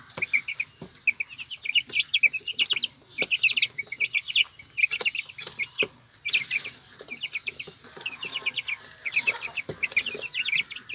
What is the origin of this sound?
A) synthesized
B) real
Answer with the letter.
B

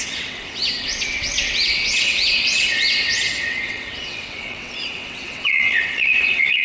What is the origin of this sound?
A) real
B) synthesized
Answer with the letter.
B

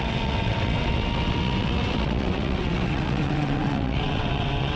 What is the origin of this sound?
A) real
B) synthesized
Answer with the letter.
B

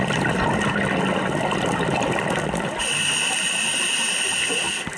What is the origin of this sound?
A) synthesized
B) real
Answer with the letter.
B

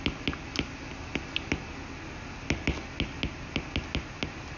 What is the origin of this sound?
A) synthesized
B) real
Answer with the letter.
B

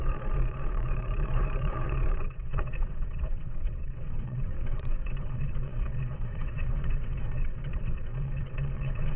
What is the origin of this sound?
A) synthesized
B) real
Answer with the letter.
A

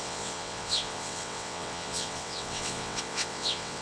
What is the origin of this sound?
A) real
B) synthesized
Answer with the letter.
B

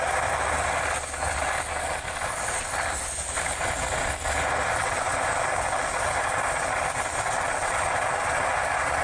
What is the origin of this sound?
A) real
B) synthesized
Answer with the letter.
A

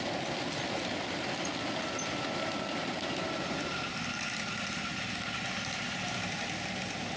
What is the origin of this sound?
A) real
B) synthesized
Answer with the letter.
A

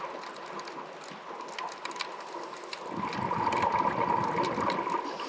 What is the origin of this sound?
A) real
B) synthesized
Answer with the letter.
A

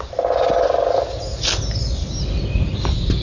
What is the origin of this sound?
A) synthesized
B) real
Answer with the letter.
B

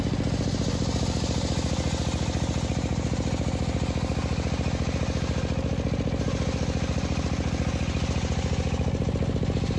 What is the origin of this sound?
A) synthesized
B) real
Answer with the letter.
B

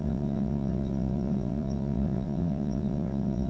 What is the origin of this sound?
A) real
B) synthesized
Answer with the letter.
B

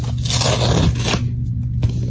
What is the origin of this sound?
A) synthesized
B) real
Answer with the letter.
B